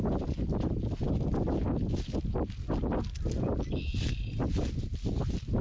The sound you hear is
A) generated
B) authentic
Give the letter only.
B